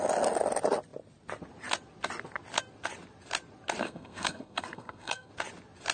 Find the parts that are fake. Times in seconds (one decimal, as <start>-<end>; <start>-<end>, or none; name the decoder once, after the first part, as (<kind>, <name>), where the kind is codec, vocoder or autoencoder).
3.8-5.3 (codec, SNAC)